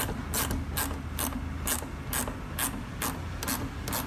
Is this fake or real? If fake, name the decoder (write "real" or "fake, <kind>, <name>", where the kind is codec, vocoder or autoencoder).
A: real